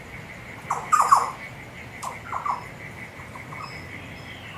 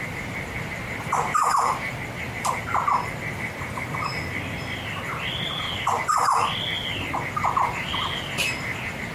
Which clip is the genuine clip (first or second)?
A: first